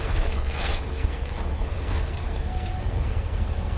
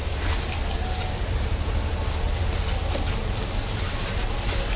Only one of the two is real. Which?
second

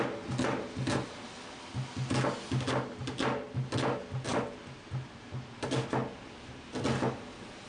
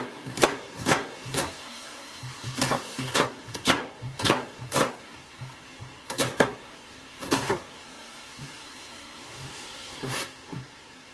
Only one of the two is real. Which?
first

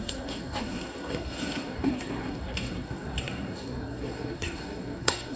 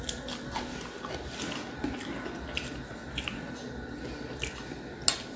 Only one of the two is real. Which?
second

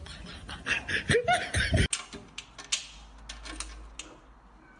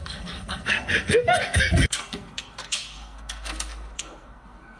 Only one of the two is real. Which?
first